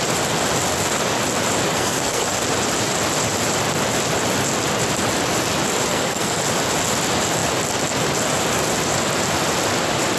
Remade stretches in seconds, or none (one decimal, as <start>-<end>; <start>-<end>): 1.7-2.4; 5.9-6.4